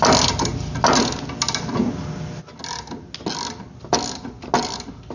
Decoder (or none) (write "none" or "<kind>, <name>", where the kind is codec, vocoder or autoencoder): none